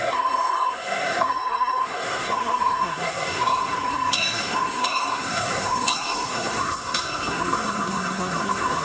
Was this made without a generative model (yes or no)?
no